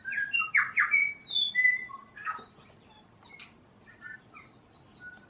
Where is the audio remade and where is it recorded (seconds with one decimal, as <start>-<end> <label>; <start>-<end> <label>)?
0.0-5.3 recorded